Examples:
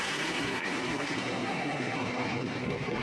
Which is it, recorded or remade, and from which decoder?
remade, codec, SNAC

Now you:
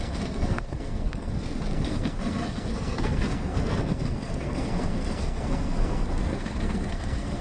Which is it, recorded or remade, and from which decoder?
remade, codec, SNAC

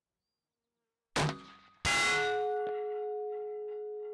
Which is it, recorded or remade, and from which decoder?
recorded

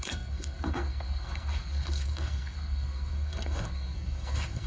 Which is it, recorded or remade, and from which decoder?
remade, codec, SNAC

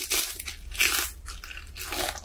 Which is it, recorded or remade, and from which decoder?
recorded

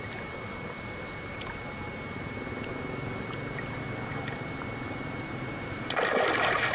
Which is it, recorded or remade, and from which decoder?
recorded